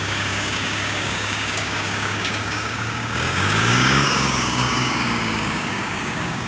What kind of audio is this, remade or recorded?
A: remade